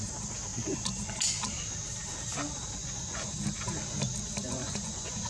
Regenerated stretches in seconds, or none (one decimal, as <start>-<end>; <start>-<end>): 0.5-1.3; 2.8-3.3; 4.4-5.3